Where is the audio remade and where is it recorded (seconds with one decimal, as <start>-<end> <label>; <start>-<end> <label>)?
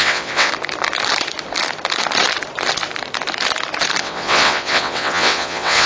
0.0-0.5 remade; 0.5-4.0 recorded; 4.0-5.9 remade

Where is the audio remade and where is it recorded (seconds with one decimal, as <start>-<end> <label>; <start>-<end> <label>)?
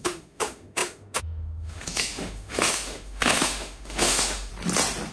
0.0-4.5 remade; 4.5-5.1 recorded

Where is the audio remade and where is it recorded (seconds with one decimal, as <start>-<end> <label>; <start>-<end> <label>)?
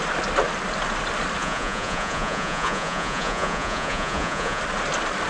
0.0-1.4 recorded; 1.4-4.6 remade; 4.6-5.3 recorded